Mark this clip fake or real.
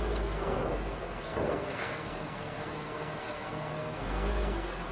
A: fake